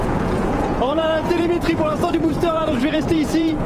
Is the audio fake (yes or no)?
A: yes